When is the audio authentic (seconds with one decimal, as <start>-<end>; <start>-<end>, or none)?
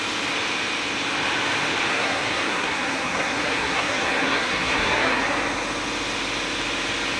0.0-1.9; 5.2-7.2